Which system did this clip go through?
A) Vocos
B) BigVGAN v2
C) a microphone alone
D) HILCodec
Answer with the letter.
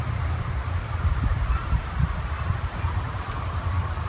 B